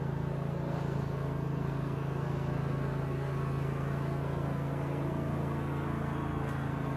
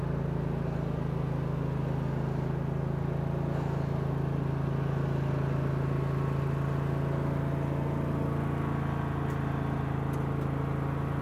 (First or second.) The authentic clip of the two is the second